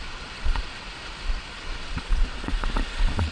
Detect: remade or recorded remade